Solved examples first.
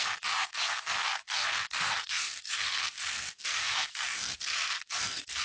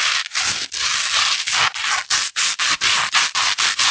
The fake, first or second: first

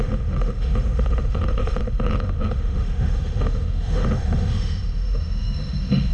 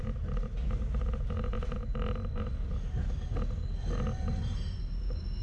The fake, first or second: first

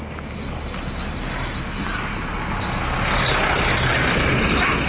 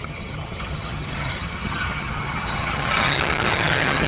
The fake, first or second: second